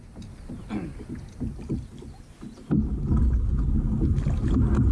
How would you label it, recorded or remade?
recorded